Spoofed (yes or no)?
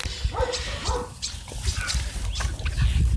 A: no